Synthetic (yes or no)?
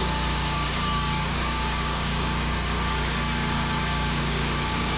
yes